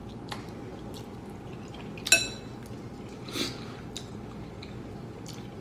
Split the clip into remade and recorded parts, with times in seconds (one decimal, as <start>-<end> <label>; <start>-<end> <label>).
0.0-5.6 recorded